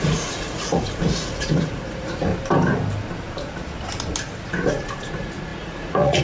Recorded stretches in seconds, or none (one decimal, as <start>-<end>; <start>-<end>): 2.3-4.7